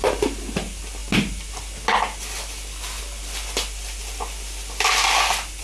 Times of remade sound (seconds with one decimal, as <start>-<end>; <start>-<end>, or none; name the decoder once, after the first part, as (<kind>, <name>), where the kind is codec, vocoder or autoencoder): none